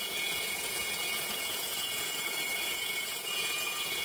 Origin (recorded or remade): remade